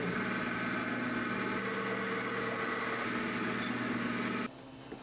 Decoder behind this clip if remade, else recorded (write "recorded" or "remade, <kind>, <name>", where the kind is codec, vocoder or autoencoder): recorded